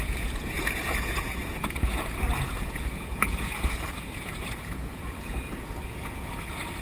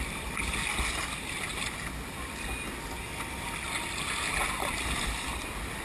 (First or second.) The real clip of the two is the second